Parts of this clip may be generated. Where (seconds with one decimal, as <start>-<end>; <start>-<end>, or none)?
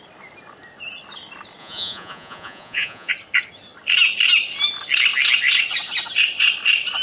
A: 1.6-3.1